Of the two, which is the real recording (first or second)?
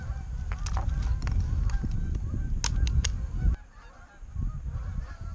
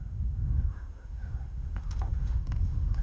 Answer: first